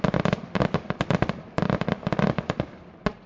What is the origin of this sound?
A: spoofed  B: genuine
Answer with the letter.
B